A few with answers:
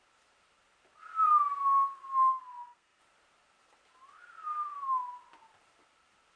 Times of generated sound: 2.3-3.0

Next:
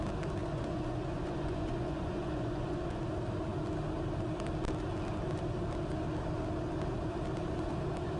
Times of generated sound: 0.4-3.0

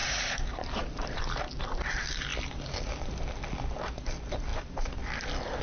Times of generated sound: 0.0-1.4; 4.5-5.0

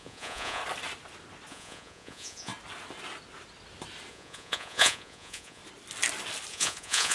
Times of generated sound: 0.0-0.6; 1.5-2.5; 4.1-5.6; 6.5-7.1